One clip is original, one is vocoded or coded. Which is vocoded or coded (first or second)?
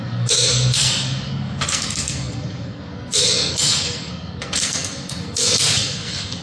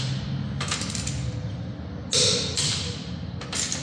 first